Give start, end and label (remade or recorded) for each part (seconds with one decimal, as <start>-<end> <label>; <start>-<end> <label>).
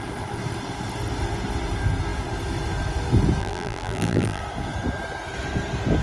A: 0.0-3.4 recorded; 3.4-4.4 remade; 4.4-6.0 recorded